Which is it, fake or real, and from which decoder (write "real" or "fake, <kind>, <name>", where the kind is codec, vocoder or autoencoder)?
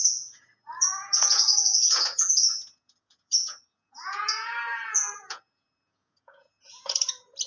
fake, vocoder, Vocos